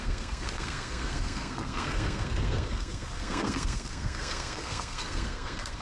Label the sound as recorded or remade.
remade